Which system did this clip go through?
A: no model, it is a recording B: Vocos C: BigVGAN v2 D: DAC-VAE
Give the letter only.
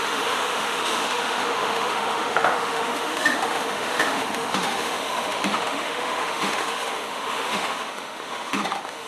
D